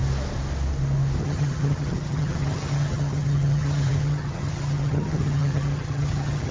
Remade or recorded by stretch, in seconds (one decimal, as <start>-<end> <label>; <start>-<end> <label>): 0.0-1.2 recorded; 1.2-6.5 remade